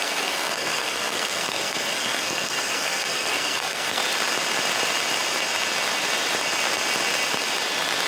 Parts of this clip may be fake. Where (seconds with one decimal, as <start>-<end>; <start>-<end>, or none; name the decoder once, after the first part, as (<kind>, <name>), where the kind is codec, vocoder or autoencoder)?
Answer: 0.0-4.0 (codec, SNAC)

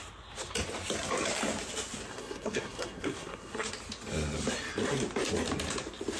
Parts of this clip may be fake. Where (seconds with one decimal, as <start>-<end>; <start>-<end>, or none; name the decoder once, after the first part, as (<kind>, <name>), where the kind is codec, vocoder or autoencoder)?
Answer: 2.1-3.7 (codec, SNAC)

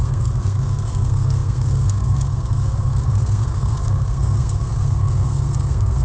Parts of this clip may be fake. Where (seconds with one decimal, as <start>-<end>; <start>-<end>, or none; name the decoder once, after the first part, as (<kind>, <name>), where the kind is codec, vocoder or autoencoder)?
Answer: 0.0-6.0 (codec, SNAC)